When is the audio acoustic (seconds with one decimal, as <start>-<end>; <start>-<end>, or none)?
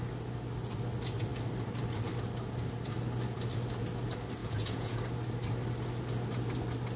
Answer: 0.0-4.4; 5.0-7.0